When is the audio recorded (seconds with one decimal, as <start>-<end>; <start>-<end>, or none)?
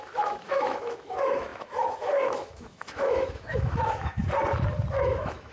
4.2-4.9